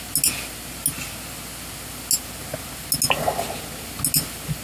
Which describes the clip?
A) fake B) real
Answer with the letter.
B